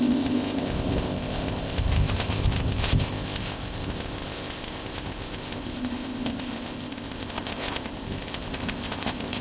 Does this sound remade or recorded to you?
remade